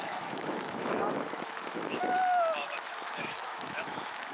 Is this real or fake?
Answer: fake